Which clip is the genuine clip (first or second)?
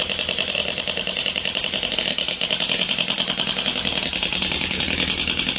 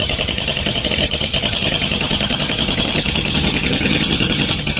first